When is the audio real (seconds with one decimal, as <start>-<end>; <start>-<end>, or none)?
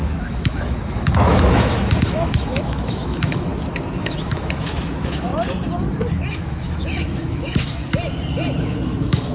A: 3.5-4.0; 5.3-6.3; 7.8-8.6